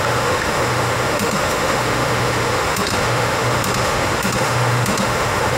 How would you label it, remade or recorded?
remade